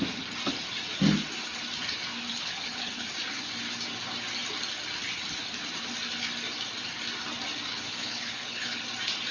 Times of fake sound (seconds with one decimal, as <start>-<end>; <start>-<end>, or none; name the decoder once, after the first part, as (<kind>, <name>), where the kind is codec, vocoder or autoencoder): 2.3-3.1 (codec, HILCodec); 7.7-8.8